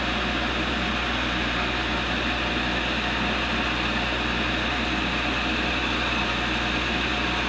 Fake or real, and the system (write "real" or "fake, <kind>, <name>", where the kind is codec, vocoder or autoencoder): real